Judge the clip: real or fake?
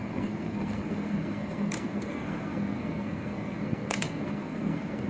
fake